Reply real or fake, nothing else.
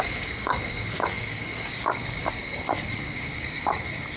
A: fake